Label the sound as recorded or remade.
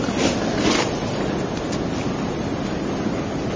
recorded